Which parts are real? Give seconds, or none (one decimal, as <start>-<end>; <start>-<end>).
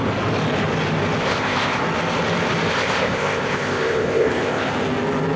0.0-1.2; 1.8-2.7; 4.7-5.4